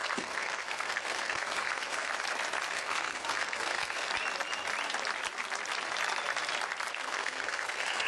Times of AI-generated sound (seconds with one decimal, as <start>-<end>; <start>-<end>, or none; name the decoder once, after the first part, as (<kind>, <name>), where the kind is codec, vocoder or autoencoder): 0.0-2.1 (codec, SNAC); 2.7-4.1; 6.9-8.1